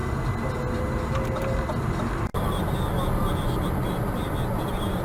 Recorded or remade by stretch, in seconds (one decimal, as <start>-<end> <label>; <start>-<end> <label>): 0.0-5.0 recorded